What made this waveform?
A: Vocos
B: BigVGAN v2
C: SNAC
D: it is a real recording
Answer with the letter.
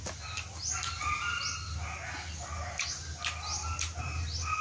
D